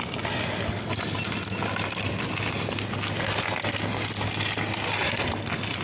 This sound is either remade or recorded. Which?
recorded